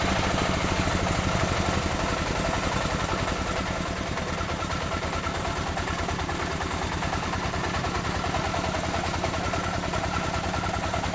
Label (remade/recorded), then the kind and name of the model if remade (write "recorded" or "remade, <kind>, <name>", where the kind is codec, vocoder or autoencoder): recorded